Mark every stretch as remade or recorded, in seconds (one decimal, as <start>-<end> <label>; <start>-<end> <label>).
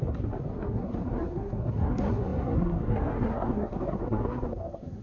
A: 0.0-5.0 remade